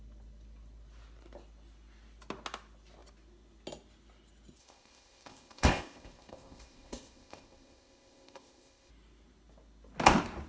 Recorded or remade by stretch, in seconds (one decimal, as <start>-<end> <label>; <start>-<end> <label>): 0.0-4.6 recorded; 4.6-8.9 remade; 8.9-10.5 recorded